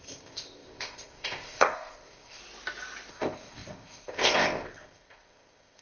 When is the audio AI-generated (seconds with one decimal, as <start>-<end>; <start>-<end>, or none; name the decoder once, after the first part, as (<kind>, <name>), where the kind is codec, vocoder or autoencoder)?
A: 0.0-2.4 (codec, ZipCodec); 3.1-5.8